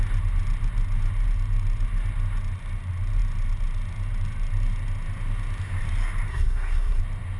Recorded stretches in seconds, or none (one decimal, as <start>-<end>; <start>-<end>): 0.0-6.3; 7.0-7.4